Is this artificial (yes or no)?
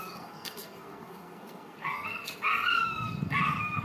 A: yes